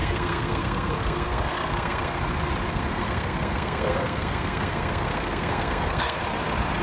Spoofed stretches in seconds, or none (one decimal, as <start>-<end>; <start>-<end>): 0.0-2.2; 2.7-6.2